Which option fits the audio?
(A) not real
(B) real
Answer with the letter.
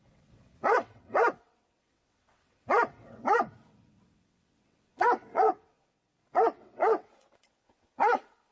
A